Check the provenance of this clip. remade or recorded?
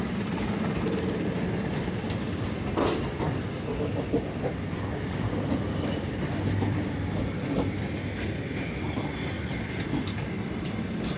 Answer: recorded